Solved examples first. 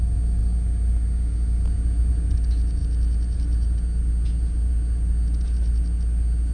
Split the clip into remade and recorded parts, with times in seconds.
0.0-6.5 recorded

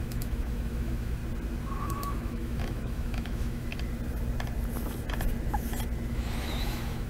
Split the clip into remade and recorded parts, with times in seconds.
0.0-1.2 remade; 1.2-1.8 recorded; 1.8-3.7 remade; 3.7-6.1 recorded; 6.1-7.1 remade

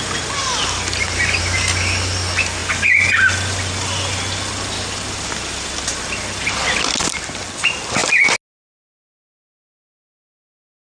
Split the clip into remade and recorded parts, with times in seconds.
0.0-10.9 recorded

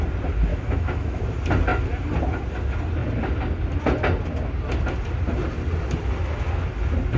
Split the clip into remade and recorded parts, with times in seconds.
0.0-0.5 recorded; 0.5-1.2 remade; 1.2-7.2 recorded

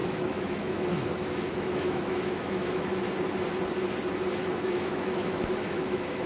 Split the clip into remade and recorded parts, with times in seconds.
0.0-2.9 remade; 2.9-4.4 recorded; 4.4-6.3 remade

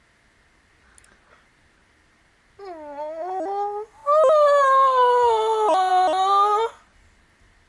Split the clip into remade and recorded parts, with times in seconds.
0.0-7.7 recorded

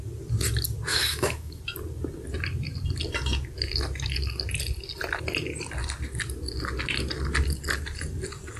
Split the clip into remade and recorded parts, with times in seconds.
0.0-0.9 recorded; 0.9-1.6 remade; 1.6-8.6 recorded

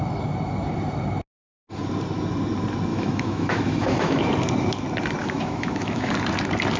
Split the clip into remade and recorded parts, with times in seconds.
0.0-2.9 recorded; 2.9-4.2 remade; 4.2-5.2 recorded; 5.2-6.1 remade; 6.1-6.8 recorded